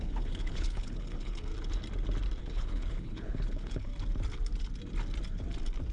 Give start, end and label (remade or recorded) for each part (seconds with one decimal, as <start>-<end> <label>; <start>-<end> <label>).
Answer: 0.0-1.5 remade; 1.5-2.4 recorded; 2.4-3.9 remade; 3.9-5.9 recorded